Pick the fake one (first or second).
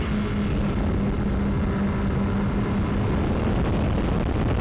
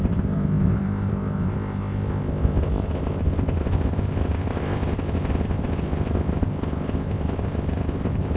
second